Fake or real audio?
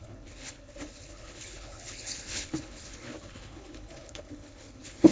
fake